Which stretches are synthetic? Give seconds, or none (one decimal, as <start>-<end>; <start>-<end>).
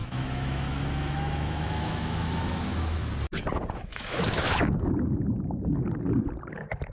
0.0-3.1; 3.9-4.9